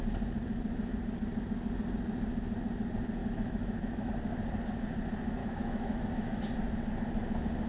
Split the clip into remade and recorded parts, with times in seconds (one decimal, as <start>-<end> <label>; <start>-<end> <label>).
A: 0.0-3.2 recorded; 3.2-4.1 remade; 4.1-5.4 recorded; 5.4-6.4 remade; 6.4-7.7 recorded